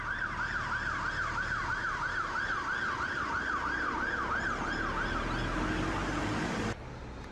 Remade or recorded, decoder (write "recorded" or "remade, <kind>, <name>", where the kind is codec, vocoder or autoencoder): recorded